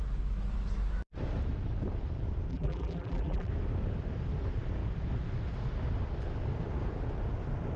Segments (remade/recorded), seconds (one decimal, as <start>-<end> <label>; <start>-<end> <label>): 0.0-2.5 recorded; 2.5-3.5 remade; 3.5-7.8 recorded